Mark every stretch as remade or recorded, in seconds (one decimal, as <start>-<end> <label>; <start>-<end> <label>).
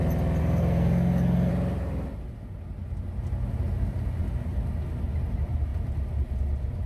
0.0-0.4 recorded; 0.4-1.5 remade; 1.5-6.9 recorded